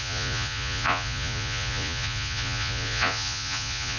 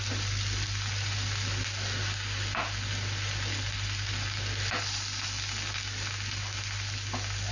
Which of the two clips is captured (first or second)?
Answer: second